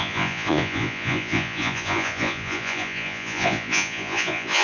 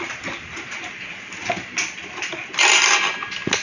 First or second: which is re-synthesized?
first